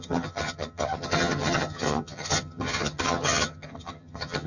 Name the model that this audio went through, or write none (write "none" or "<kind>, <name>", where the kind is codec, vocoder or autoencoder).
vocoder, HiFi-GAN